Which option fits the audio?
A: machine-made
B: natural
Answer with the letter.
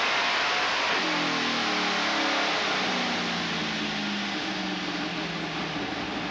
B